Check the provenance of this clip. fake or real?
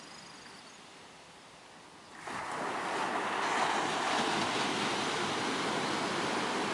real